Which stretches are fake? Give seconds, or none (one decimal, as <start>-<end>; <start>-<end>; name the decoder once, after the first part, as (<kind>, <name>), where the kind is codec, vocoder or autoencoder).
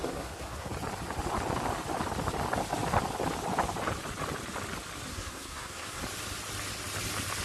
0.0-0.7 (codec, SNAC); 5.1-6.0